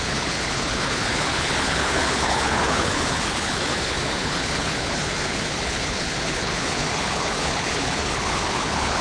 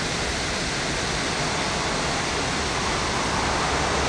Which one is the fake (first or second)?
first